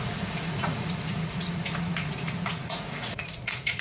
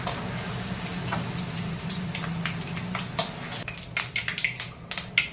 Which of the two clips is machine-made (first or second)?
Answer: first